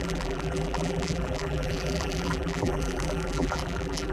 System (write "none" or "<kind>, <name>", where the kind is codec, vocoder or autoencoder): vocoder, BigVGAN v2